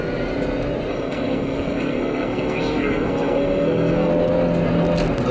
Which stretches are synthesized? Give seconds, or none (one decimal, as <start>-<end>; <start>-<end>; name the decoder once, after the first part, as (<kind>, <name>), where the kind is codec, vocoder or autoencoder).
0.9-4.1 (codec, SNAC)